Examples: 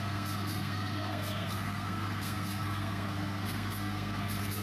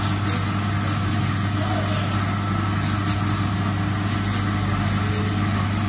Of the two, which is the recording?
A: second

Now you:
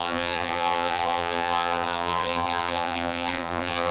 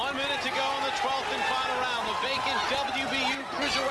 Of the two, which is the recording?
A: second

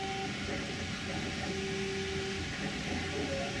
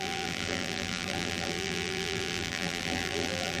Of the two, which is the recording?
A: first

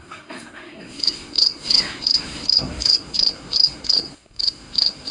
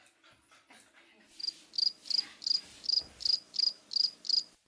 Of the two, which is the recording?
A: second